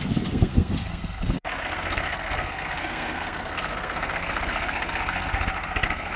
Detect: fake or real fake